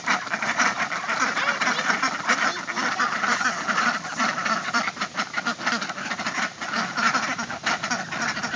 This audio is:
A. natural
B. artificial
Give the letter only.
B